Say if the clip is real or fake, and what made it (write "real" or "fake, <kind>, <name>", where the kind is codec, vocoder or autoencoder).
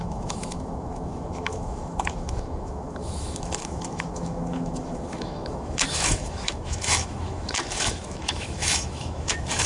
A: fake, autoencoder, DAC-VAE